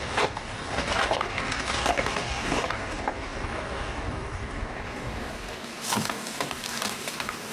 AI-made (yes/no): yes